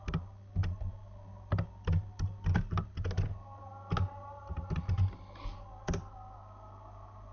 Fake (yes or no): no